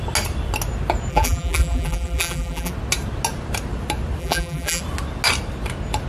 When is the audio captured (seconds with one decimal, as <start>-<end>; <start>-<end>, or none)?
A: 0.0-1.1; 2.7-4.2; 4.8-6.1